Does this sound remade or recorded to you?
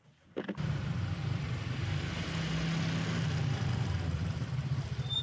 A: recorded